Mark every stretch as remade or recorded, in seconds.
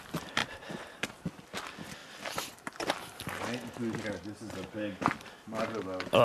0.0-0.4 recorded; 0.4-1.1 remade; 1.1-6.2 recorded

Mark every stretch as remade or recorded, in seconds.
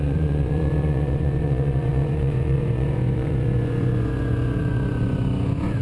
0.0-5.8 remade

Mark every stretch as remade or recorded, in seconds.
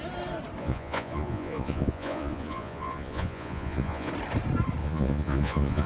0.0-0.6 recorded; 0.6-4.1 remade; 4.1-4.8 recorded; 4.8-5.9 remade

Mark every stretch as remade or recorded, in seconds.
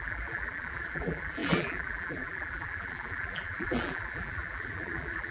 0.0-5.3 remade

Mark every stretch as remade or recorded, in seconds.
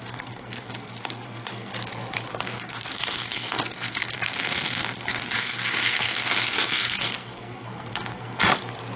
0.0-1.7 remade; 1.7-2.3 recorded; 2.3-8.4 remade; 8.4-9.0 recorded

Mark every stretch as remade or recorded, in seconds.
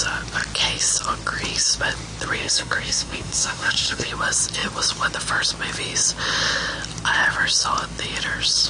0.0-2.4 recorded; 2.4-4.1 remade; 4.1-8.7 recorded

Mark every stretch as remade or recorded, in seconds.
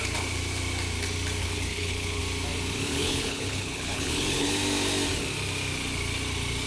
0.0-1.4 recorded; 1.4-2.2 remade; 2.2-2.9 recorded; 2.9-4.5 remade; 4.5-6.7 recorded